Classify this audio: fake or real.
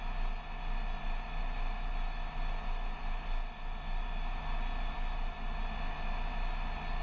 real